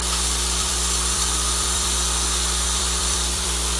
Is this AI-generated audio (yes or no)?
yes